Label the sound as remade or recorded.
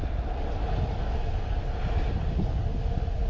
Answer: recorded